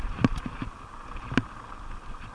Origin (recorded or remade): recorded